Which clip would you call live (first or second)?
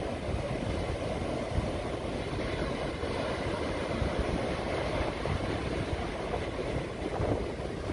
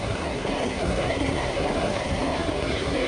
first